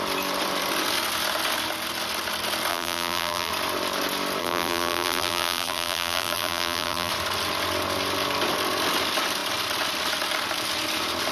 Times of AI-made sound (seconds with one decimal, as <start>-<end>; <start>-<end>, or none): 2.7-3.5; 4.4-7.1